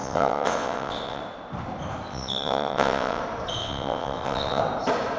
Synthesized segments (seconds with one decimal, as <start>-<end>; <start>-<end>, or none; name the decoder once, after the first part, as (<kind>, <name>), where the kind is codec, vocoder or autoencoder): 0.0-1.2 (vocoder, WaveNeXt); 2.1-3.2; 3.6-4.6